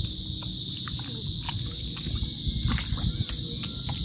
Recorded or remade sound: recorded